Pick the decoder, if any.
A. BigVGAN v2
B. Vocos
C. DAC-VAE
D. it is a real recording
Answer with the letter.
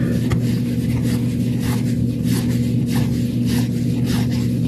D